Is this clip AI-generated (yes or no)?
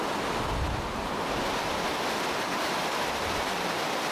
no